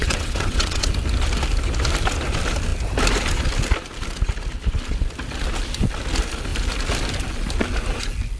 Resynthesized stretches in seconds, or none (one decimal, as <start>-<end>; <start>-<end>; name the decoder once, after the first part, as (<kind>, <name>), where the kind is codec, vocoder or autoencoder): 0.0-0.9 (vocoder, WaveNeXt)